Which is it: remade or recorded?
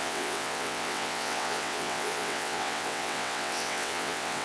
remade